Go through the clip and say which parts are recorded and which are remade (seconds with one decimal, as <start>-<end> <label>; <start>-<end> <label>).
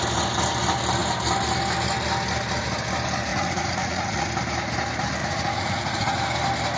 0.0-3.3 recorded; 3.3-4.3 remade; 4.3-5.2 recorded; 5.2-6.2 remade; 6.2-6.8 recorded